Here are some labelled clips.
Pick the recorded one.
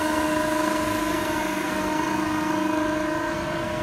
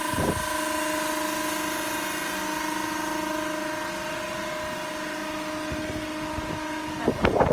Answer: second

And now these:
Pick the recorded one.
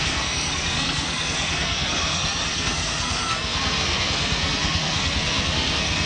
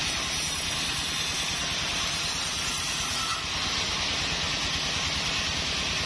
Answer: second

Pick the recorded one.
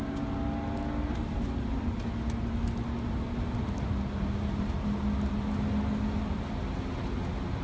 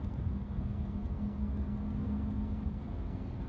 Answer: first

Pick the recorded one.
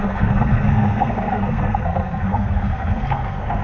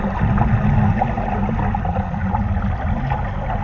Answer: second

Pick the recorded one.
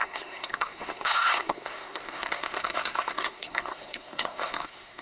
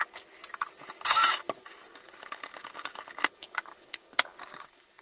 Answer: second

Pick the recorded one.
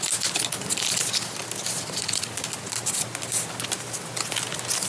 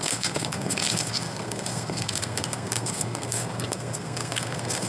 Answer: first